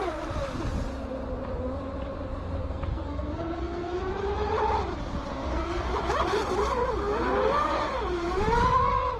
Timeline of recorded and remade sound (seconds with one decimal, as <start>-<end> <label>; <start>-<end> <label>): 0.0-2.6 recorded; 2.6-4.0 remade; 4.0-5.3 recorded; 5.3-5.9 remade; 5.9-9.2 recorded